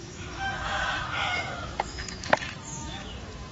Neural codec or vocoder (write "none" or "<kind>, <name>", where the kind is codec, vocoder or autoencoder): autoencoder, DAC-VAE